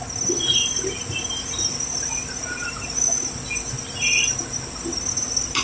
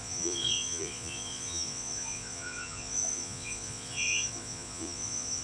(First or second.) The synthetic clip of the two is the second